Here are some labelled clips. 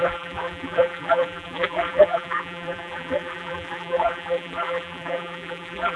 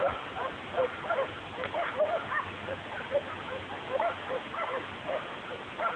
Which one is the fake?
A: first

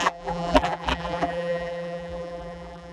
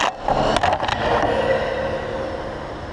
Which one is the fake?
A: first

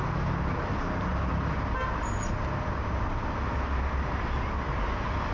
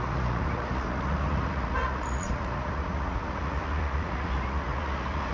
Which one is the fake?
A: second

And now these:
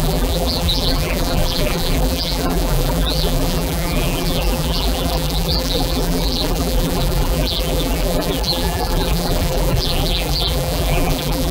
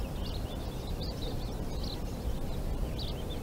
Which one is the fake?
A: first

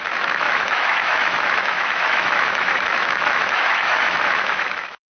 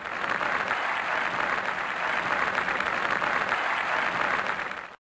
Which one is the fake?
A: first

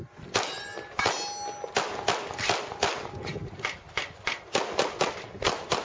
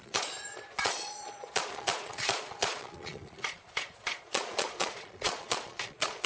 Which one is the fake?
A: second